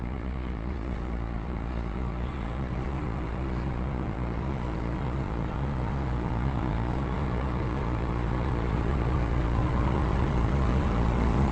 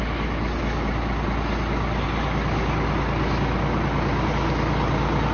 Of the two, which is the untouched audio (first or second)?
second